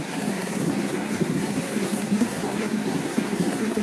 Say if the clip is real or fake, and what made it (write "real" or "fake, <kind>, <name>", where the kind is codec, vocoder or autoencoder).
fake, codec, SNAC